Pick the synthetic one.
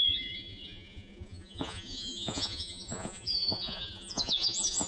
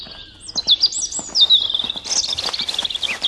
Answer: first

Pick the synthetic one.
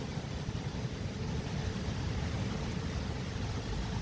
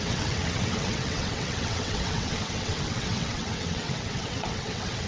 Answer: second